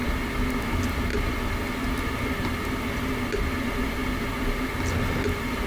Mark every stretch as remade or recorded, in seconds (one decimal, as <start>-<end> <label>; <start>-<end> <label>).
0.0-5.7 recorded